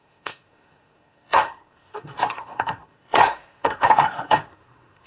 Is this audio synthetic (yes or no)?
yes